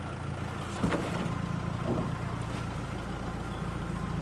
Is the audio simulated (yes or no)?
no